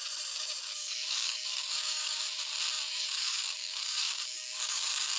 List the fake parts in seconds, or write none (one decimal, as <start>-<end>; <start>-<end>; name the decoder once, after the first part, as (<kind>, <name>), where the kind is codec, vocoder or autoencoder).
0.7-2.5 (codec, DAC); 3.1-5.2